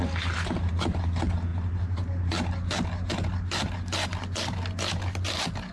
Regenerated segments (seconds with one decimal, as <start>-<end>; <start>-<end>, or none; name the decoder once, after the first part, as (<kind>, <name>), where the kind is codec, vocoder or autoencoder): none